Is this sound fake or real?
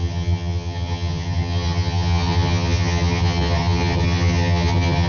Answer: fake